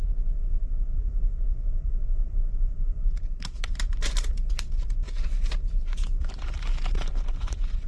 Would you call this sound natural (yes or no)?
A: no